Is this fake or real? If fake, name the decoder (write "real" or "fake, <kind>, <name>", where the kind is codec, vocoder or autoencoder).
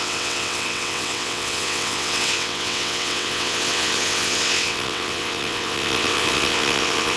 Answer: fake, vocoder, WaveNeXt